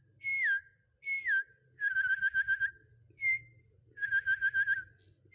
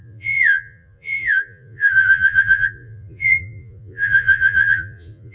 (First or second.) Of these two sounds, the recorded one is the first